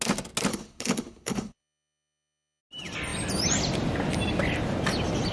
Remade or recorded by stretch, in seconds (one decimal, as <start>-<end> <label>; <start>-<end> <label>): 0.0-0.5 recorded; 0.5-2.6 remade; 2.6-5.3 recorded